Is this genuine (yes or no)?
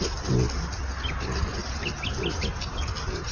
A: yes